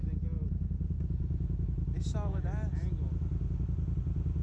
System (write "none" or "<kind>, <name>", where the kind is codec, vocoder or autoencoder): none